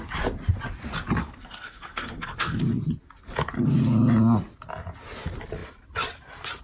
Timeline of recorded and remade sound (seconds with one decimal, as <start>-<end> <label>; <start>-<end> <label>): 0.0-1.2 recorded; 1.2-2.6 remade; 2.6-6.6 recorded